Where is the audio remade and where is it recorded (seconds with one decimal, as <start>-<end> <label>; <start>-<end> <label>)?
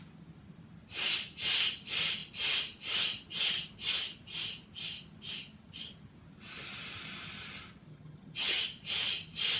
0.0-7.9 recorded; 7.9-8.6 remade; 8.6-9.6 recorded